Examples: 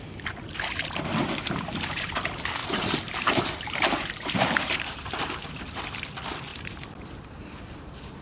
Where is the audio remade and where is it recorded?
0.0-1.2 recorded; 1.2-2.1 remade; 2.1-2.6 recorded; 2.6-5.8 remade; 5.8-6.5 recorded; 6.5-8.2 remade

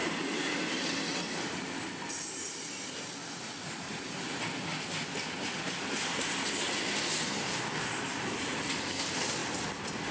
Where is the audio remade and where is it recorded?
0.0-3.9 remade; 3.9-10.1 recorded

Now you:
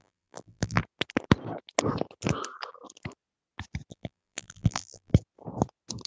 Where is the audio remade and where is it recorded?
0.0-0.8 remade; 0.8-3.9 recorded; 3.9-5.1 remade; 5.1-6.1 recorded

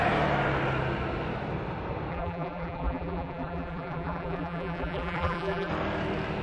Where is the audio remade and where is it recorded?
0.0-2.1 recorded; 2.1-5.7 remade; 5.7-6.4 recorded

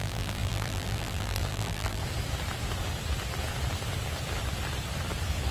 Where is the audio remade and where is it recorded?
0.0-2.0 remade; 2.0-5.5 recorded